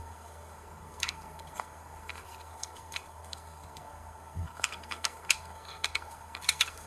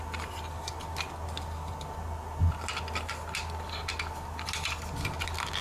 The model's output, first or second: first